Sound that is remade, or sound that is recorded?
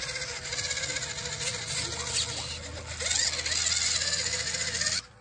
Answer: recorded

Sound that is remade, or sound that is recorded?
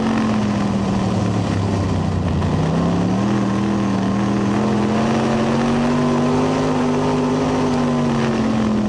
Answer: recorded